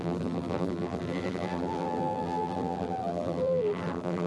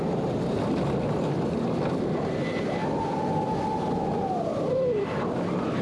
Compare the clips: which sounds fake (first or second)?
first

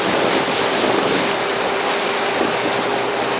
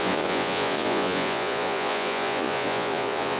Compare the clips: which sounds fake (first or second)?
second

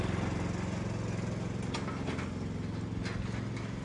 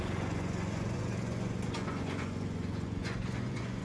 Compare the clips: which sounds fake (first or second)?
second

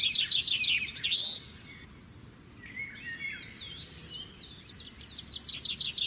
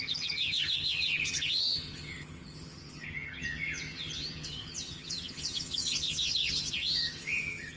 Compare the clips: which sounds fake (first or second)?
second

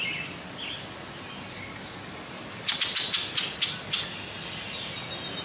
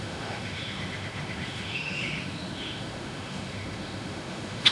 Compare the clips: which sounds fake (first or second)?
second